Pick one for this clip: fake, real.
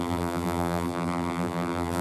fake